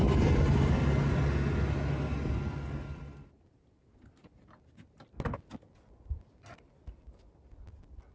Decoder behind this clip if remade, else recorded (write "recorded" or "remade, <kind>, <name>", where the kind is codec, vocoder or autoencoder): recorded